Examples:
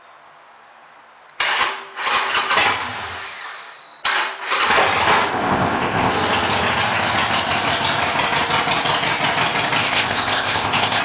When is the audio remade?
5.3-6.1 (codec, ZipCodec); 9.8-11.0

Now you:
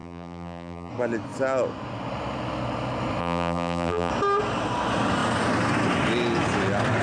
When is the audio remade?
0.0-0.9 (vocoder, BigVGAN v2); 3.2-4.1

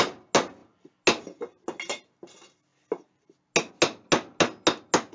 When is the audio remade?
none

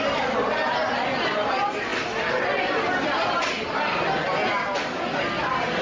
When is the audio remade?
none

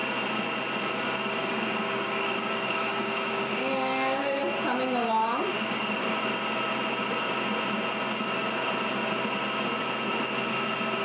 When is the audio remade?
1.4-4.4 (codec, DAC); 5.5-6.2

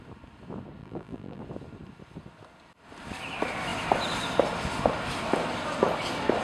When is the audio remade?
0.8-1.4 (vocoder, BigVGAN v2)

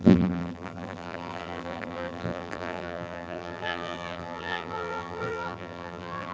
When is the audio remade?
0.0-6.3 (vocoder, BigVGAN v2)

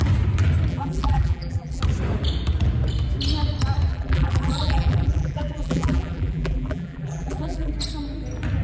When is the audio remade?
0.7-1.8 (vocoder, BigVGAN v2); 3.9-7.7